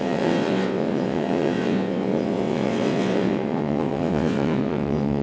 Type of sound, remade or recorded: remade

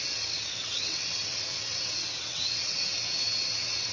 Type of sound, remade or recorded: remade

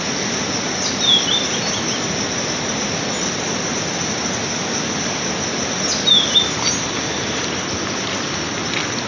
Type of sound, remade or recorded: recorded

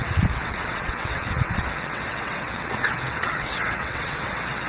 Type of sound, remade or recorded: remade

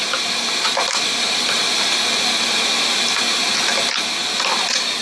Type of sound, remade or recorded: recorded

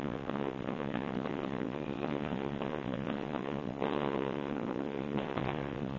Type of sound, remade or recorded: remade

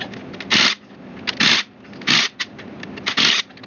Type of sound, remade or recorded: recorded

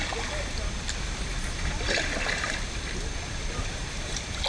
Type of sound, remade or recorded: recorded